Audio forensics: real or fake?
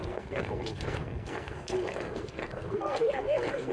fake